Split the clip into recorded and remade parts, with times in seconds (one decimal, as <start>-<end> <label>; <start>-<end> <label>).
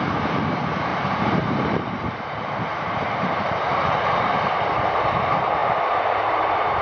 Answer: 0.0-0.9 recorded; 0.9-4.4 remade; 4.4-5.6 recorded; 5.6-6.8 remade